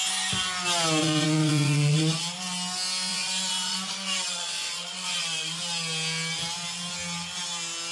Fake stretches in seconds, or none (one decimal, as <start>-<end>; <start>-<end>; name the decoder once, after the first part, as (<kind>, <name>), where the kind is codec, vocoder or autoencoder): 1.0-2.2 (vocoder, Vocos); 3.1-5.6